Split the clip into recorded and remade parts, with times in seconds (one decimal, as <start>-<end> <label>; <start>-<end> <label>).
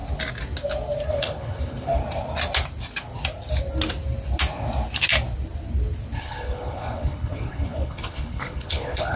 0.0-1.1 recorded; 1.1-2.0 remade; 2.0-6.2 recorded; 6.2-9.2 remade